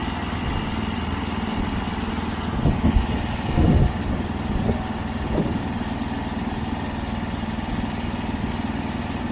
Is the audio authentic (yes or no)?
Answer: yes